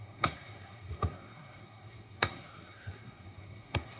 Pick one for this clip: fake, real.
fake